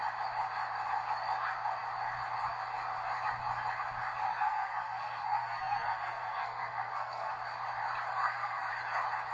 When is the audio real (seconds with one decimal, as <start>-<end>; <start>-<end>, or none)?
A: 0.0-4.3; 7.3-8.1; 8.7-9.3